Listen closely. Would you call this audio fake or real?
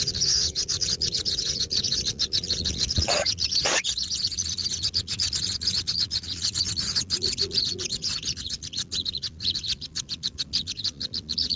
fake